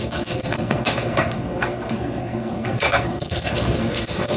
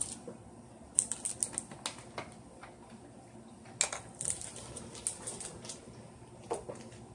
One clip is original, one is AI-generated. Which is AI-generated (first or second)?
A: first